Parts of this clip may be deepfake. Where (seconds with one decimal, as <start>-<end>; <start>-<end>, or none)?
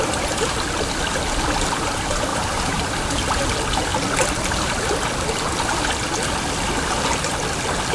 2.3-2.8